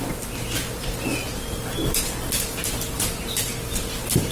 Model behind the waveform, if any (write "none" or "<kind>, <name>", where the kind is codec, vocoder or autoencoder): none